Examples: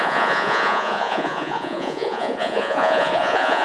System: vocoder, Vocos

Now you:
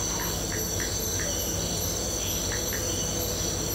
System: none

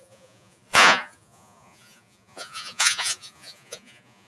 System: vocoder, Vocos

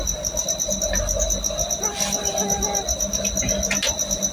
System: none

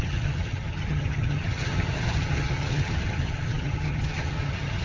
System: vocoder, HiFi-GAN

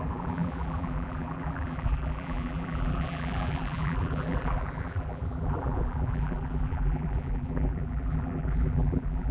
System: vocoder, BigVGAN v2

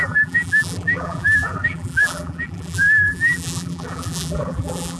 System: vocoder, BigVGAN v2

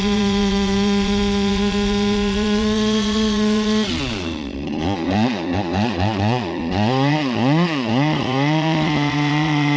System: vocoder, Vocos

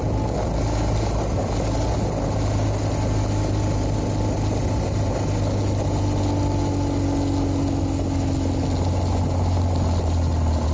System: none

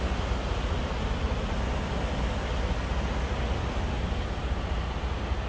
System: none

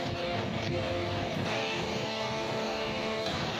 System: codec, DAC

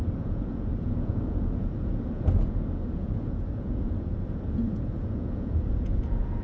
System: vocoder, Vocos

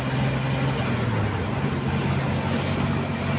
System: none